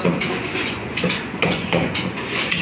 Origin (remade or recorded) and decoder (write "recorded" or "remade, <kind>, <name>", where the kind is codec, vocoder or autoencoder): remade, vocoder, Vocos